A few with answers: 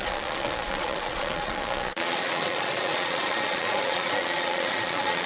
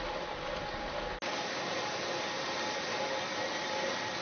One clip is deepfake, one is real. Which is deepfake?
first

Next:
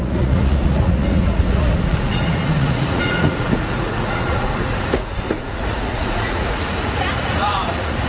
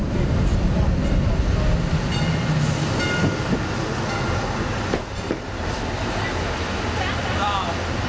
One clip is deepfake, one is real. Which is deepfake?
first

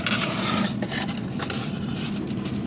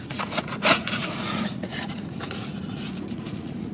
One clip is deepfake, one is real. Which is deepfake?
second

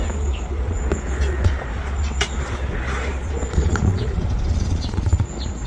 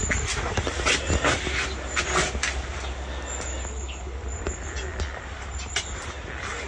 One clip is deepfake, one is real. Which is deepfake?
first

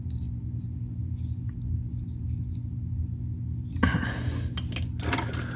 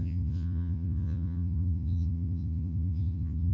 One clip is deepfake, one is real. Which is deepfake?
second